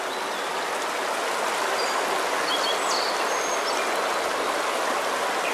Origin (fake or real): real